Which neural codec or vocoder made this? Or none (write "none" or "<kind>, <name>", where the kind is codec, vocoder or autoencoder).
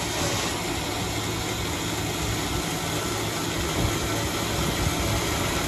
none